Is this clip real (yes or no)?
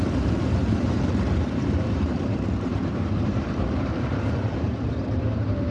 no